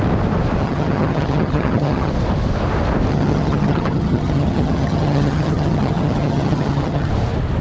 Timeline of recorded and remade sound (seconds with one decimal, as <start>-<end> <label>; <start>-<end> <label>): 0.0-0.6 recorded; 0.6-2.1 remade; 2.1-3.1 recorded; 3.1-7.1 remade; 7.1-7.6 recorded